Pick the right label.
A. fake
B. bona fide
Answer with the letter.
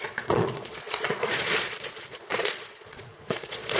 A